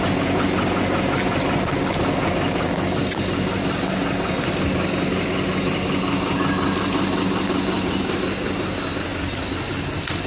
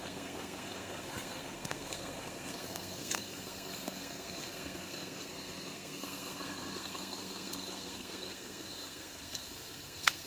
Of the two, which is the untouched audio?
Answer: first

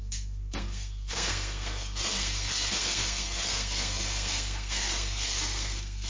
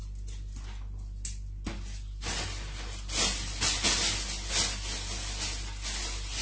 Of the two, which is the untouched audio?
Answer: second